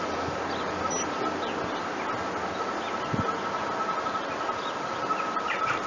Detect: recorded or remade recorded